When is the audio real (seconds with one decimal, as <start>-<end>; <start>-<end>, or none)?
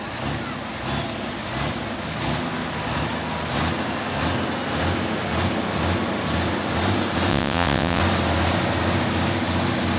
0.0-7.3; 8.0-10.0